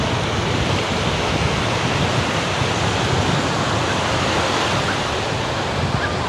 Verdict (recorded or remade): recorded